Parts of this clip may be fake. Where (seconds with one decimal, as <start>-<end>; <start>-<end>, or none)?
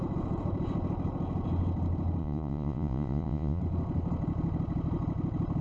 2.2-3.6